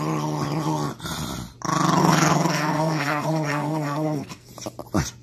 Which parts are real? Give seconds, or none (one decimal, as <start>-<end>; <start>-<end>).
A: 0.0-2.0; 4.5-5.2

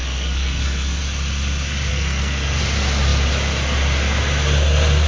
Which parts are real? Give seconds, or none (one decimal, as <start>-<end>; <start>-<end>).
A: 1.0-1.9; 2.6-5.1

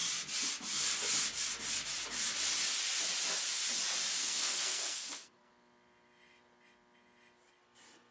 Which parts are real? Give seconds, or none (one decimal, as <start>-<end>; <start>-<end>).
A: 0.0-4.2; 5.5-8.1

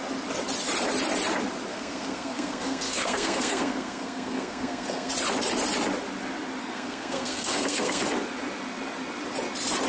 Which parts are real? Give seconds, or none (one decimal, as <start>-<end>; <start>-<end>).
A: 0.0-1.7; 5.1-6.6; 8.0-9.9

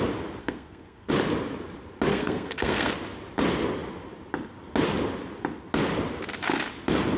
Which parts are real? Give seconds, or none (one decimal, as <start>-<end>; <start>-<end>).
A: 0.0-0.4; 1.1-2.1; 2.9-7.2

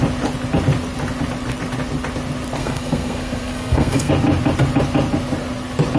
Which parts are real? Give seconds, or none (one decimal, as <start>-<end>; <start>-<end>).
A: 0.0-2.6; 4.1-6.0

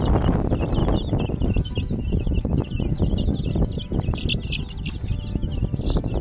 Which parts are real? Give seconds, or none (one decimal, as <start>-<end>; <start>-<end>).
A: 0.0-6.2

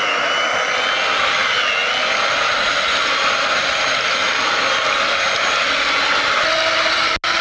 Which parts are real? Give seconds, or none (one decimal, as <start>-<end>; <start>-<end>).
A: 0.0-7.4